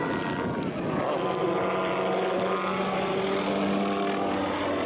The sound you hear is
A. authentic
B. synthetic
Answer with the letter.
A